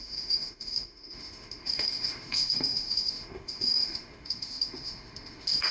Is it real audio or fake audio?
fake